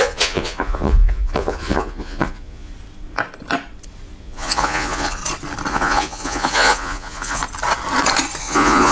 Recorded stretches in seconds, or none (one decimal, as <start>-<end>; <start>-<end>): 2.7-4.2; 5.2-5.7; 7.4-8.4